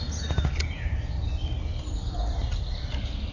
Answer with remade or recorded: recorded